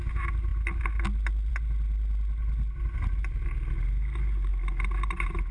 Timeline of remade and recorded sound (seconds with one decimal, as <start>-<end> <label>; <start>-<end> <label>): 0.0-5.5 recorded